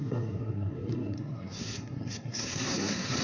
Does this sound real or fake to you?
fake